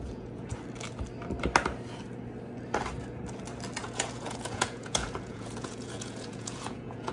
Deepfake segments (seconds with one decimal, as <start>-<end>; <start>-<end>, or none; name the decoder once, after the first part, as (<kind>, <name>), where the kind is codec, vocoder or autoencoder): 0.0-0.5 (vocoder, Vocos); 3.8-7.1

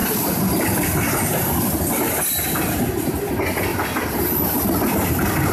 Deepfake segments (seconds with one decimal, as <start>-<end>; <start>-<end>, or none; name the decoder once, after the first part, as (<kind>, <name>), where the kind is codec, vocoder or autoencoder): 3.7-4.4 (vocoder, BigVGAN v2)